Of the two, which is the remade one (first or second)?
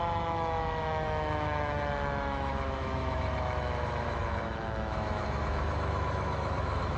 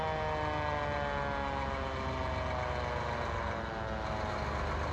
first